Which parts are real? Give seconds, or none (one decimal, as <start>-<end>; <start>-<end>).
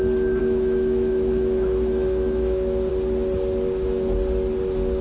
0.0-0.4; 2.9-5.0